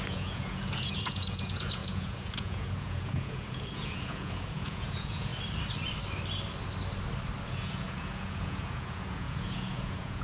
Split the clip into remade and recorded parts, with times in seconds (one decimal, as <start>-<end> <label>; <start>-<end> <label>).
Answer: 0.0-5.3 remade; 5.3-7.4 recorded; 7.4-10.2 remade